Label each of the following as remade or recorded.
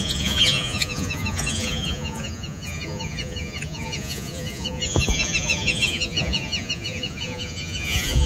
remade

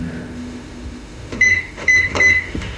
remade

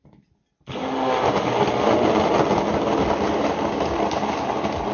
recorded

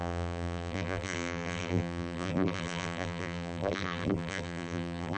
remade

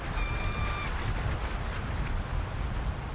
recorded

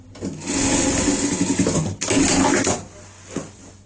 recorded